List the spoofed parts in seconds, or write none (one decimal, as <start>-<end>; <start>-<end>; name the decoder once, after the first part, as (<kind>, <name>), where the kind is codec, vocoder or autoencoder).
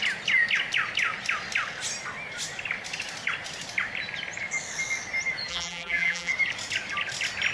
5.5-6.3 (vocoder, BigVGAN v2)